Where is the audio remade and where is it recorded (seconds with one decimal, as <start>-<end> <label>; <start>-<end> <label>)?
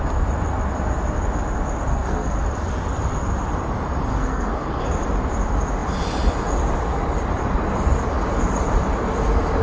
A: 0.0-1.9 recorded; 1.9-2.4 remade; 2.4-4.1 recorded; 4.1-4.8 remade; 4.8-9.6 recorded